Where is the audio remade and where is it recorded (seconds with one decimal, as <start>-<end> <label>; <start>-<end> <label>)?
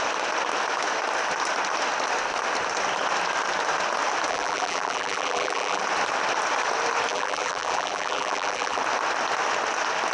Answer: 0.0-4.3 recorded; 4.3-5.8 remade; 5.8-7.1 recorded; 7.1-8.8 remade; 8.8-10.1 recorded